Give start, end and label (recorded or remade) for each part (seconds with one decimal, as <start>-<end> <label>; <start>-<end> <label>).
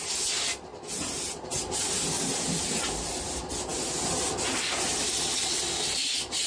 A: 0.0-6.5 recorded